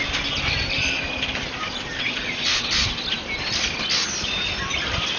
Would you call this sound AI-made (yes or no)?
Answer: no